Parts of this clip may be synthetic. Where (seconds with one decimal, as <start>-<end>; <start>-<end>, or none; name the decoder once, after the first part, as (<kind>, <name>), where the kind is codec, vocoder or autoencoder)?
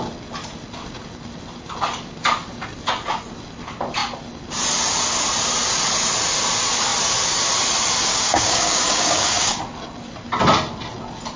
8.1-9.6 (codec, DAC)